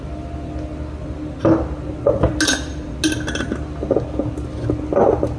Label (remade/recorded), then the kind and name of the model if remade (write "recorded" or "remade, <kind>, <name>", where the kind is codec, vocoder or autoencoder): recorded